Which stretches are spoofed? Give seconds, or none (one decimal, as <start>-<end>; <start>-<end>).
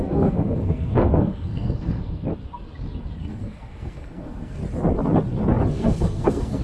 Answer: 0.0-2.3; 3.2-4.6; 5.7-6.6